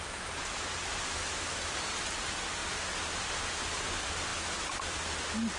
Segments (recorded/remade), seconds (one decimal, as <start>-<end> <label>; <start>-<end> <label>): 0.0-5.6 recorded